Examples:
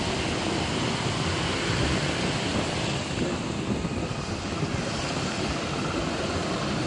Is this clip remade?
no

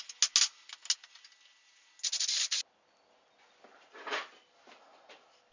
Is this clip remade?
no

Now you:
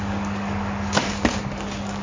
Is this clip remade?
yes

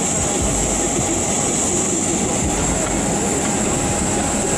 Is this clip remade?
no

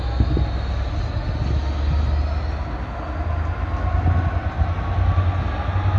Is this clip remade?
no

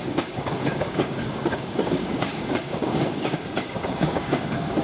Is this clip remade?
yes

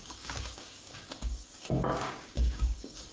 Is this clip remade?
yes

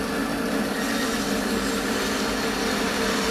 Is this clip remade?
no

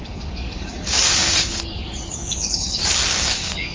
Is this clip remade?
yes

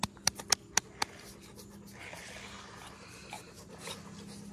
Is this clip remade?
no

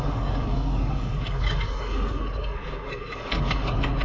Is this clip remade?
yes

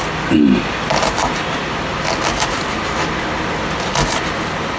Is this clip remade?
no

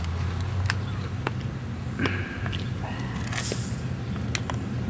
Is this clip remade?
no